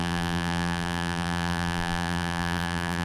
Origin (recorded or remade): remade